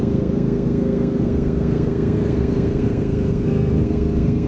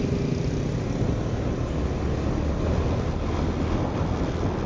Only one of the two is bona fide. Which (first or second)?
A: second